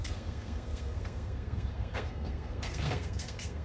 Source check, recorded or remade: remade